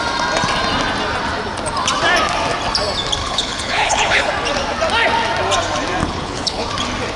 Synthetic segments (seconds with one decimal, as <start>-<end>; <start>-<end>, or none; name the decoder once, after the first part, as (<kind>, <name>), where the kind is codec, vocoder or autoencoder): 3.2-4.3 (codec, HILCodec); 6.0-6.7